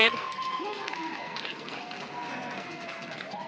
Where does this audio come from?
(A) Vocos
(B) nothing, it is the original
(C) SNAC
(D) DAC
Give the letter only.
C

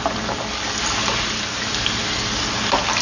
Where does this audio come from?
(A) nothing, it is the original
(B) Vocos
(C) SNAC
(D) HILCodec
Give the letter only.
A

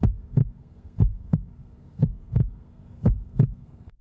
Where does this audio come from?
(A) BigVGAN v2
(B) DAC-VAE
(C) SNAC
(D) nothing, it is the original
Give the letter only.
C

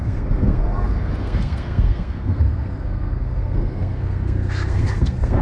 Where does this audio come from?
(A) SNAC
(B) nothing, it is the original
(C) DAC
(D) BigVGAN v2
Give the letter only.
A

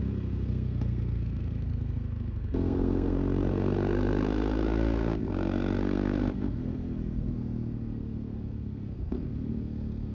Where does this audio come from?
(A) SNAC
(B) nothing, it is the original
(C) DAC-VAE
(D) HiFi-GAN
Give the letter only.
A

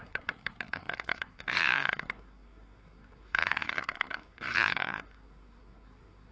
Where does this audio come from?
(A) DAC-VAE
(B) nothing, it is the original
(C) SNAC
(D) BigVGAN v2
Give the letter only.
C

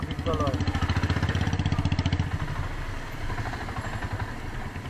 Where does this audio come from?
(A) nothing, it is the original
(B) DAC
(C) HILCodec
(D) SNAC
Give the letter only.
A